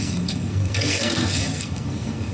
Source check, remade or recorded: remade